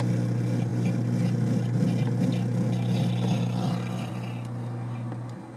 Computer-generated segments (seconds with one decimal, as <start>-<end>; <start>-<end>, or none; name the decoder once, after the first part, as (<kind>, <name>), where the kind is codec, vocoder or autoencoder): none